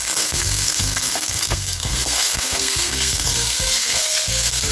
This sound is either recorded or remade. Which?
remade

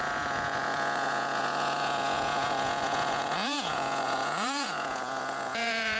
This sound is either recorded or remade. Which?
remade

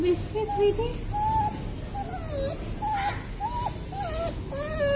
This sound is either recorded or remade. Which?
recorded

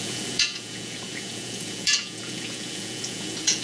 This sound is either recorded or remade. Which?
remade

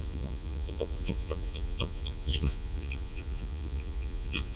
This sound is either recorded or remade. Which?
remade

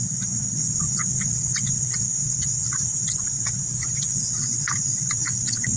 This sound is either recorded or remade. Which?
remade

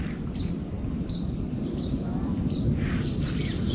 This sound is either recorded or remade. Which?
recorded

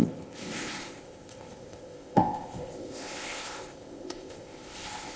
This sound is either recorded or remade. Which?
remade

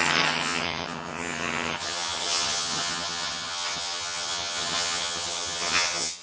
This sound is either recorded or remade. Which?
remade